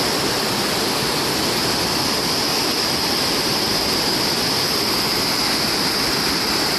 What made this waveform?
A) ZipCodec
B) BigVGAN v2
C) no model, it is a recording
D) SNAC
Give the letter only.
C